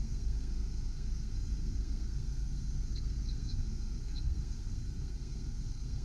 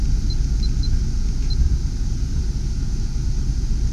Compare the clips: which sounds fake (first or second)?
first